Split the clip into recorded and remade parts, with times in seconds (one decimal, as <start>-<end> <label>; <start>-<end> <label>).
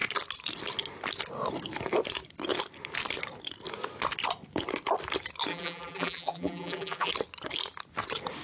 0.0-5.5 recorded; 5.5-7.1 remade; 7.1-8.4 recorded